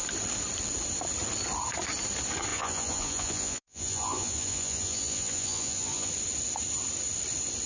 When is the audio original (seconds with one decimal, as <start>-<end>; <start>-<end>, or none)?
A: 0.0-2.5; 6.1-7.7